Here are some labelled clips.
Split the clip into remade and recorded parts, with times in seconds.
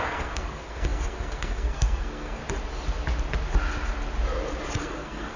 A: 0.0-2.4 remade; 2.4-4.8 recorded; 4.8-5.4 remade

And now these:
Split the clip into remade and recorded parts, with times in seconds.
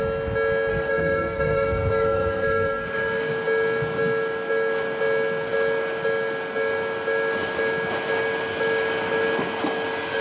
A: 0.0-0.7 recorded; 0.7-3.3 remade; 3.3-10.2 recorded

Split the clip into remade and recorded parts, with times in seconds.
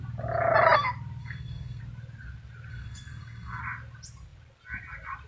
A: 0.0-1.2 recorded; 1.2-1.8 remade; 1.8-2.7 recorded; 2.7-3.6 remade; 3.6-5.3 recorded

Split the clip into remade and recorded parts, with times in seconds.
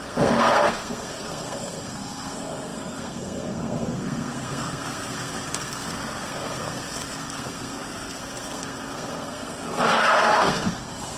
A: 0.0-11.2 remade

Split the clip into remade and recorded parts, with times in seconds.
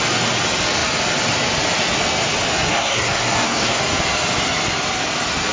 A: 0.0-2.7 recorded; 2.7-3.8 remade; 3.8-5.5 recorded